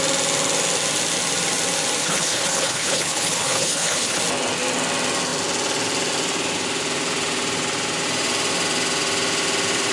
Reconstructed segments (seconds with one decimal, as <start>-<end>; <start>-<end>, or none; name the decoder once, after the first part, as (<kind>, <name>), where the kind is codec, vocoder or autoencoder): 2.0-4.2 (codec, HILCodec)